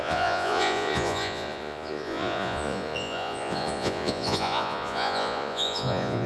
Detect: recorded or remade remade